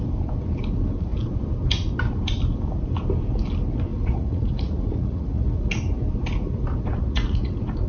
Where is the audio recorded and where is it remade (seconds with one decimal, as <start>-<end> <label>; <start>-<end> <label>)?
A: 0.0-3.9 recorded; 3.9-5.7 remade; 5.7-6.9 recorded; 6.9-7.9 remade